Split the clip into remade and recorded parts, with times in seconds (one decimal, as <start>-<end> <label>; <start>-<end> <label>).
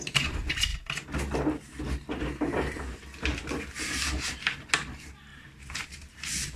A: 0.0-5.3 recorded; 5.3-6.6 remade